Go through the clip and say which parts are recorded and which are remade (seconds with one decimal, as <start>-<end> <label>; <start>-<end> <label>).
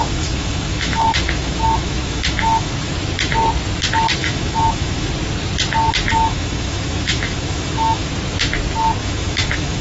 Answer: 0.0-2.9 remade; 2.9-4.2 recorded; 4.2-5.1 remade; 5.1-6.1 recorded; 6.1-8.1 remade; 8.1-9.0 recorded; 9.0-9.8 remade